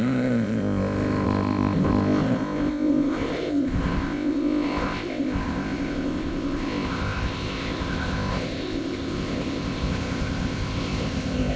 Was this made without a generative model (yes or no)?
no